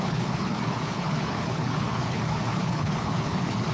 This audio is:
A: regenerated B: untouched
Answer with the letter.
A